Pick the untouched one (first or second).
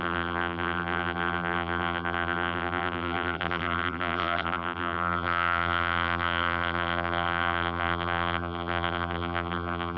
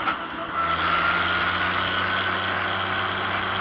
second